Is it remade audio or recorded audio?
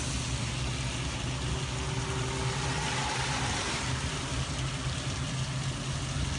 recorded